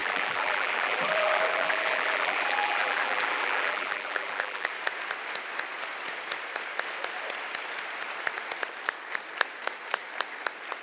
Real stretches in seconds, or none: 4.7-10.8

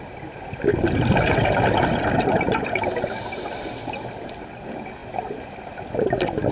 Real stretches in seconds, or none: 0.0-0.7; 3.6-6.5

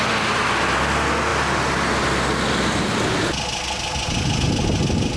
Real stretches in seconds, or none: 0.0-5.2

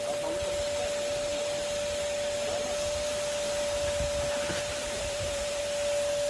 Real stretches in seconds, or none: 0.0-4.7; 5.6-6.3

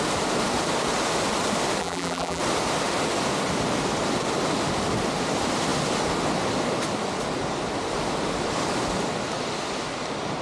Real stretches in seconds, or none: 0.0-1.8; 2.4-10.4

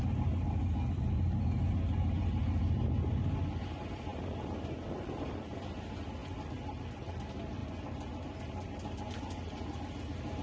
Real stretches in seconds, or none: 0.0-10.4